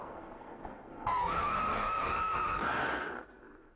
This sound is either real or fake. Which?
fake